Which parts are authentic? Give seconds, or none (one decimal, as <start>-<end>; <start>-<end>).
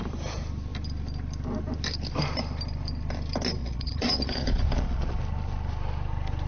0.0-3.6; 5.2-6.5